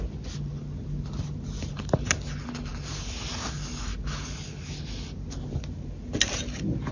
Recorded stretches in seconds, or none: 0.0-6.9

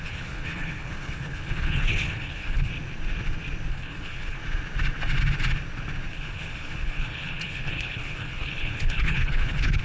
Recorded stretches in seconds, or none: 2.7-3.7; 4.4-6.1

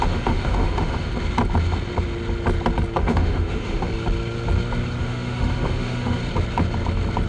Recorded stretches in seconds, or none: 1.1-3.0; 3.9-5.0; 6.2-7.3

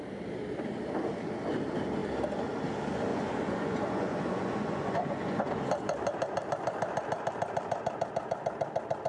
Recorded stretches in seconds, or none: 0.0-3.1; 5.5-9.1

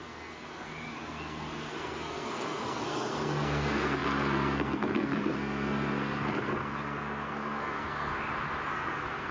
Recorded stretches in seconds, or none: 8.1-8.7

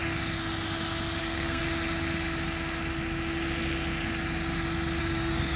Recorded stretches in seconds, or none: 0.0-1.2; 1.6-5.0

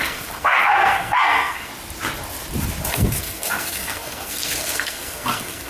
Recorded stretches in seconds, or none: 1.7-2.9